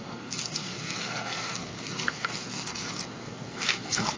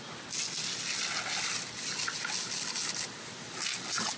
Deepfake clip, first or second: first